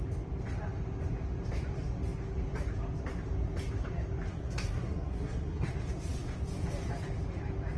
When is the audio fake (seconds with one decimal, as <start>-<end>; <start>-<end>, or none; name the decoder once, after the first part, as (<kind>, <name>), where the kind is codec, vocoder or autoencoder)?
4.3-5.7 (codec, SNAC)